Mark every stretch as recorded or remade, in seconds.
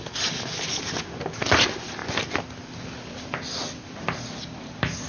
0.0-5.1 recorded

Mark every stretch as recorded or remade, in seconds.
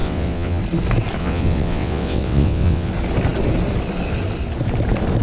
0.0-0.6 remade; 0.6-1.2 recorded; 1.2-2.9 remade; 2.9-5.2 recorded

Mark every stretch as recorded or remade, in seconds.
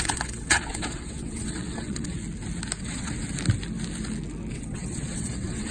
0.0-2.2 remade; 2.2-2.8 recorded; 2.8-3.2 remade; 3.2-4.5 recorded; 4.5-5.7 remade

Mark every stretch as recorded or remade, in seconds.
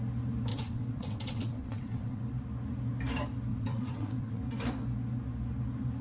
0.0-0.5 recorded; 0.5-2.2 remade; 2.2-3.5 recorded; 3.5-4.4 remade; 4.4-6.0 recorded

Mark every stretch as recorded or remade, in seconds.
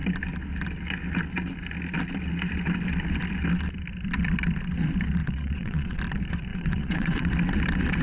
0.0-5.2 recorded; 5.2-6.0 remade; 6.0-6.5 recorded; 6.5-7.2 remade; 7.2-8.0 recorded